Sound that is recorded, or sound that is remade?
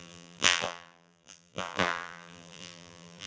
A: remade